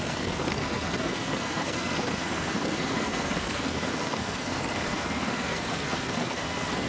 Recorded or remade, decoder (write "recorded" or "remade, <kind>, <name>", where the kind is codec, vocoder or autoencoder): remade, codec, SNAC